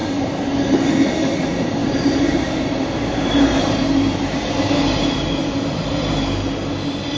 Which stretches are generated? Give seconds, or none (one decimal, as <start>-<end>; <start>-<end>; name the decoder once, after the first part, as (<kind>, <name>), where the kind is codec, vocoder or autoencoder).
0.0-0.9 (vocoder, BigVGAN v2); 1.8-6.1